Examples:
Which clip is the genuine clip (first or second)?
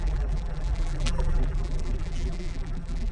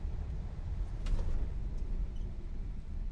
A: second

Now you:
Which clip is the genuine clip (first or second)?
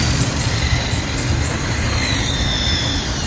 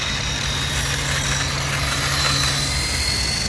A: second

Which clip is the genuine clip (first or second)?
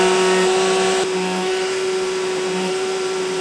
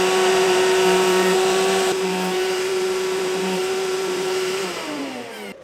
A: first